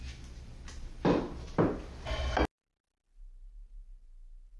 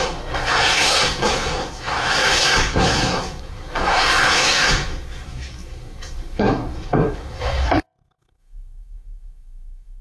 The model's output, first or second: second